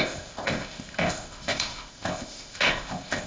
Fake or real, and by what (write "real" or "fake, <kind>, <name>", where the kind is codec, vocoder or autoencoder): fake, codec, ZipCodec